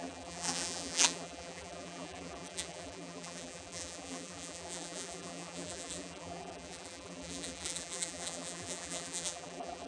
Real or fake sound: fake